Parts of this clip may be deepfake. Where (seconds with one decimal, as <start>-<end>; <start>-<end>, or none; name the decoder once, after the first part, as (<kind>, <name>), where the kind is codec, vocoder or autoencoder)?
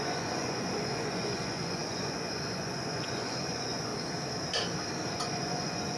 0.0-3.9 (vocoder, Vocos); 5.1-6.0